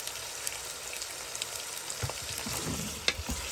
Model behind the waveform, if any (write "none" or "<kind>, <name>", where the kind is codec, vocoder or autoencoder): none